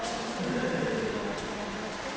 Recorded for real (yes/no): yes